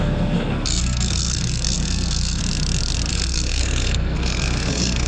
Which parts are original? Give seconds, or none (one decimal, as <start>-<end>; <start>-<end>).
2.4-3.1